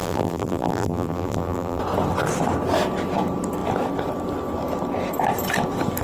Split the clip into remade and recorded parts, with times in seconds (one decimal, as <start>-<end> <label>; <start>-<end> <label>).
0.0-1.8 remade; 1.8-6.0 recorded